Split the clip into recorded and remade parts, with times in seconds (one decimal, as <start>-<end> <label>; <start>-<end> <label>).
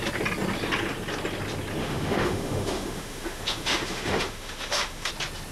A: 0.0-1.8 recorded; 1.8-5.1 remade; 5.1-5.5 recorded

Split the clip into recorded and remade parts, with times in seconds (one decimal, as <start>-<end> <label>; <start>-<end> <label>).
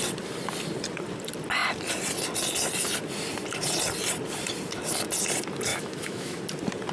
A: 0.0-5.7 recorded; 5.7-6.4 remade; 6.4-6.9 recorded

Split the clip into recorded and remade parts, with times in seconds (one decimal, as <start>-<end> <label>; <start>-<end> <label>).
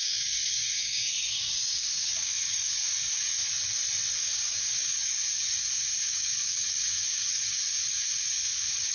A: 0.0-3.4 remade; 3.4-4.1 recorded; 4.1-8.9 remade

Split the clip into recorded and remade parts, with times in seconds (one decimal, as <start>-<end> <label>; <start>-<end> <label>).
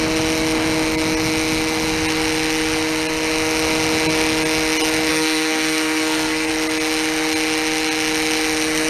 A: 0.0-5.1 recorded; 5.1-6.5 remade; 6.5-8.9 recorded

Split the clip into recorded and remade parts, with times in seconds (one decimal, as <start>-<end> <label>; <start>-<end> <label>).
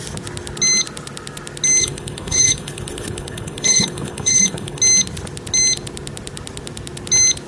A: 0.0-1.8 recorded; 1.8-4.8 remade; 4.8-7.5 recorded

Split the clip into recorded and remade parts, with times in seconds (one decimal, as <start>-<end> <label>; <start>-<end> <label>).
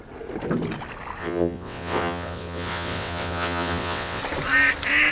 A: 0.0-1.2 recorded; 1.2-4.2 remade; 4.2-5.1 recorded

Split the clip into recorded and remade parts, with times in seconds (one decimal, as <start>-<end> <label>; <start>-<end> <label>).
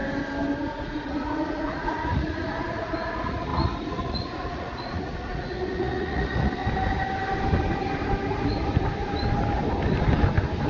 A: 0.0-0.6 recorded; 0.6-6.6 remade; 6.6-10.7 recorded